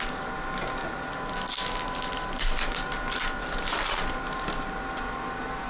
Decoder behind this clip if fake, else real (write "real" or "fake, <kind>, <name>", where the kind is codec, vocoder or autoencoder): real